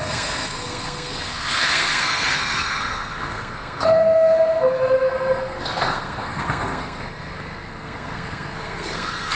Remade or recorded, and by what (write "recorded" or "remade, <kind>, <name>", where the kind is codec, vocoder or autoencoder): remade, codec, SNAC